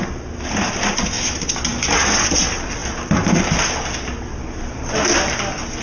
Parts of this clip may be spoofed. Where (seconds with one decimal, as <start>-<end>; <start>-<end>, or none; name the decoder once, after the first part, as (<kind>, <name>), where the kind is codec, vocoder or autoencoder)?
none